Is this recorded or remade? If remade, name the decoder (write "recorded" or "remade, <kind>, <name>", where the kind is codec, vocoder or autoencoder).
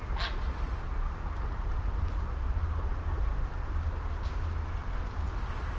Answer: recorded